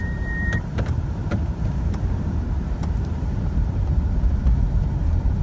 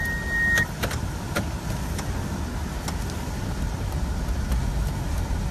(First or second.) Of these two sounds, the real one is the second